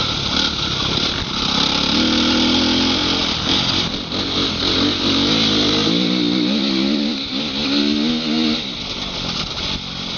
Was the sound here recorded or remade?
recorded